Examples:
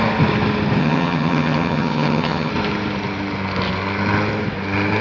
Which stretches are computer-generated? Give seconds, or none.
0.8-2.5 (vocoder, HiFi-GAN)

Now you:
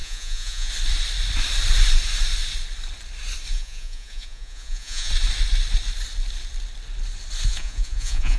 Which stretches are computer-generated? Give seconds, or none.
0.0-0.7 (vocoder, Vocos); 3.5-5.1; 7.5-8.4

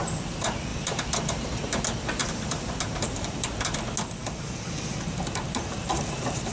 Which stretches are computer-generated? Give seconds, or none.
0.7-1.8 (vocoder, BigVGAN v2); 2.2-3.4

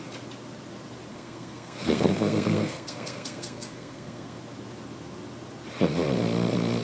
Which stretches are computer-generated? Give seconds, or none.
1.1-4.4 (codec, SNAC)

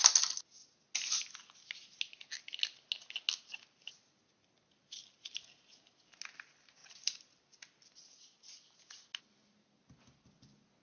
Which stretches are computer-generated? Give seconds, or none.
none